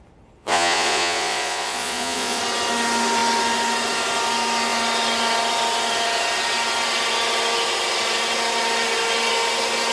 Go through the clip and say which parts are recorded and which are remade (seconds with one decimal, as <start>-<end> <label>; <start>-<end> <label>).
0.0-0.4 recorded; 0.4-2.4 remade; 2.4-9.9 recorded